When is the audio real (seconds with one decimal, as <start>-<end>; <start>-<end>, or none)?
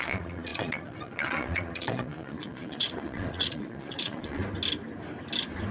4.4-5.7